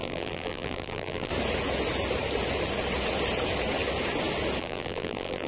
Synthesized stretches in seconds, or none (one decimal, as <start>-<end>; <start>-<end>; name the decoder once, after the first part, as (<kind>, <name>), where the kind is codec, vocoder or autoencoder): 0.0-1.3 (vocoder, BigVGAN v2); 4.6-5.5